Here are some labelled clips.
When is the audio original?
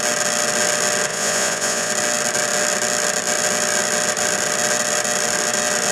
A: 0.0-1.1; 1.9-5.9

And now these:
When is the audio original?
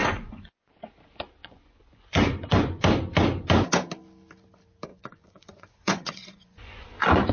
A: 0.7-1.4; 2.8-4.9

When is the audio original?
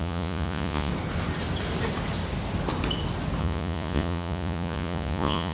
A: 0.9-3.4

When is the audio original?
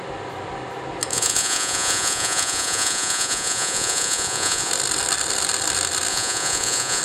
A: 0.0-1.1; 4.7-6.1